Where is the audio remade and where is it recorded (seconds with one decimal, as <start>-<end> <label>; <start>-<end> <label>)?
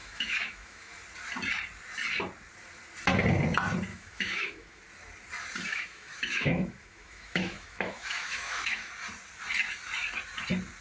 0.0-0.9 remade; 0.9-3.9 recorded; 3.9-4.8 remade; 4.8-5.7 recorded; 5.7-8.9 remade; 8.9-10.8 recorded